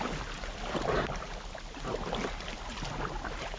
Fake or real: real